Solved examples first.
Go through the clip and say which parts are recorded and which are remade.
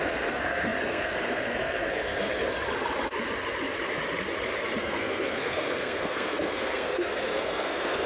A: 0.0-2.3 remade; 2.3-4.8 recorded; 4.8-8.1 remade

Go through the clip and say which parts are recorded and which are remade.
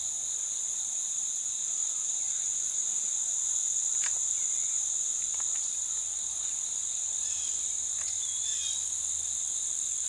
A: 0.0-10.1 recorded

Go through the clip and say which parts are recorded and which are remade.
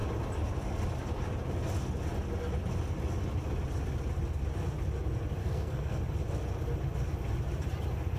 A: 0.0-5.4 recorded; 5.4-6.0 remade; 6.0-8.2 recorded